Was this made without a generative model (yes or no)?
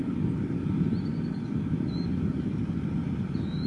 yes